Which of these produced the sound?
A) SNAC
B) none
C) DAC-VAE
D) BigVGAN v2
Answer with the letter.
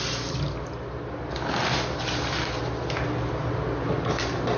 B